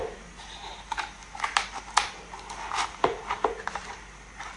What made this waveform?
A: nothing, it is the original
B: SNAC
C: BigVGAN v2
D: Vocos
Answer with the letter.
A